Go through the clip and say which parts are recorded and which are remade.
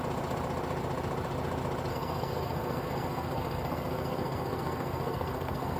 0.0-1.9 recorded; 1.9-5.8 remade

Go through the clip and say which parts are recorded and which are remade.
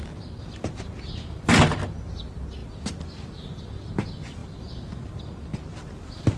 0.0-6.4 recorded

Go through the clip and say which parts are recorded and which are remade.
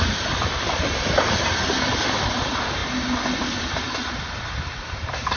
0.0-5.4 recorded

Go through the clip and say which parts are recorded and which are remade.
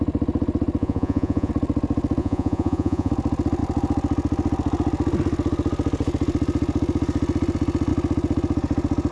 0.0-0.8 recorded; 0.8-1.5 remade; 1.5-2.2 recorded; 2.2-3.1 remade; 3.1-9.1 recorded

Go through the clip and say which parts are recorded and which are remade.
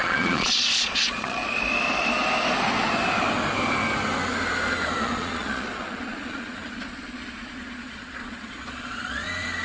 0.0-1.4 remade; 1.4-5.0 recorded; 5.0-9.6 remade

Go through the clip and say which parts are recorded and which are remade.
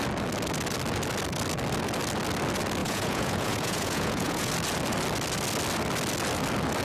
0.0-2.8 recorded; 2.8-4.5 remade; 4.5-6.8 recorded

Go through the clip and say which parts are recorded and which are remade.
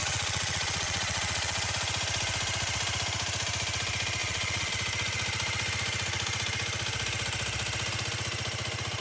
0.0-1.7 remade; 1.7-4.2 recorded; 4.2-4.7 remade; 4.7-9.0 recorded